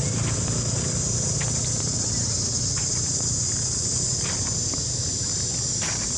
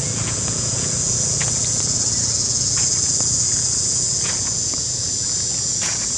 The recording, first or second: first